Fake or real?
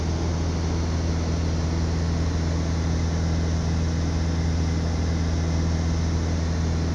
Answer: real